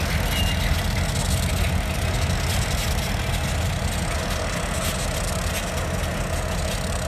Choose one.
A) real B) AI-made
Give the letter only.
A